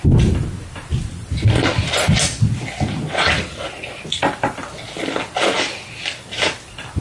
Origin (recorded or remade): recorded